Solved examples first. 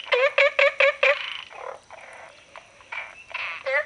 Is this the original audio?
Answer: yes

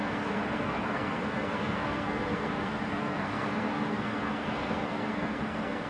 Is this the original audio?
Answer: no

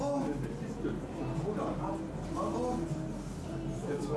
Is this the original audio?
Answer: yes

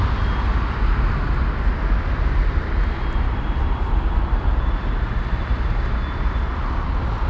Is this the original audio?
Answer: yes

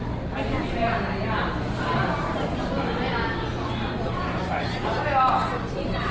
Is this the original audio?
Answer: yes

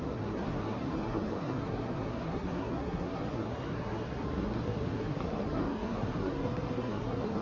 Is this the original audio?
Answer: no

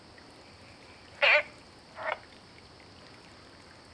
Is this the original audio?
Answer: yes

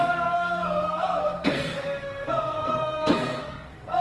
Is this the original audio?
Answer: no